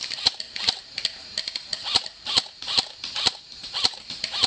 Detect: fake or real real